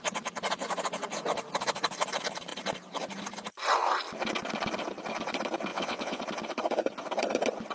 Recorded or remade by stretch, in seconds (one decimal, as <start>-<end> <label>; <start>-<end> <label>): 0.0-5.7 recorded; 5.7-6.2 remade; 6.2-7.7 recorded